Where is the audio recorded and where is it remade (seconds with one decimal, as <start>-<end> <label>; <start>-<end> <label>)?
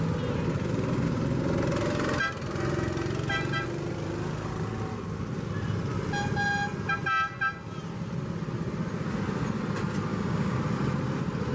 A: 0.0-10.1 recorded; 10.1-10.6 remade; 10.6-11.5 recorded